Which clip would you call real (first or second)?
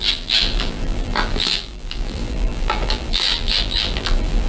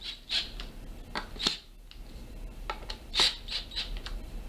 second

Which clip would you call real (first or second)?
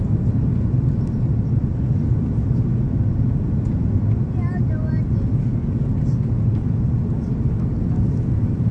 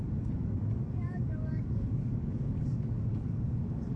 first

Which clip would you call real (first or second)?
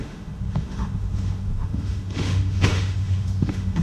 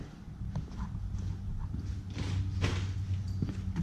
second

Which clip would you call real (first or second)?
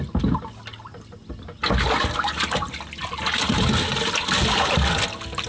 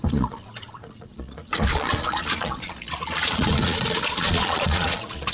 first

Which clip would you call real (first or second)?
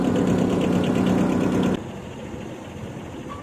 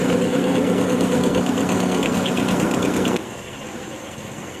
first